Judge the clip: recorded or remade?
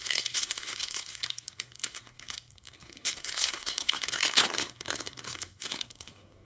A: remade